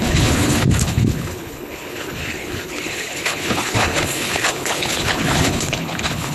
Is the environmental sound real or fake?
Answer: fake